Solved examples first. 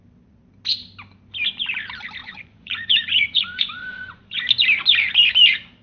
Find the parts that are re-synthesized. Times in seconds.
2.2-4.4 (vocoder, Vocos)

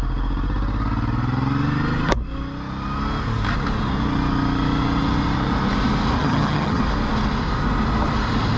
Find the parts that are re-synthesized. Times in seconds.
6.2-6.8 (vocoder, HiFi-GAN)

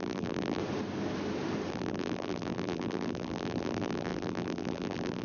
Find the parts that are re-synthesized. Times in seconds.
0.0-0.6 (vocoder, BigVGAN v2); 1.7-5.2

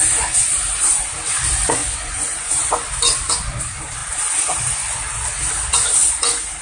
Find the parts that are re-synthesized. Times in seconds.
1.8-2.7 (vocoder, Vocos)

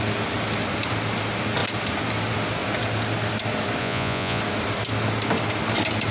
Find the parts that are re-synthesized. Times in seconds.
3.8-4.4 (vocoder, Vocos)

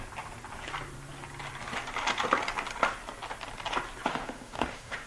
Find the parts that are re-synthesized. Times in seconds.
4.1-5.1 (autoencoder, DAC-VAE)

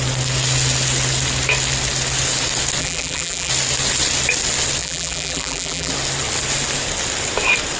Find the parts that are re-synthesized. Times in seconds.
2.8-3.5 (vocoder, BigVGAN v2); 4.8-5.9

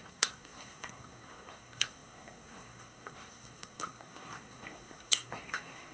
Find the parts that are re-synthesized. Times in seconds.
0.0-5.9 (codec, SNAC)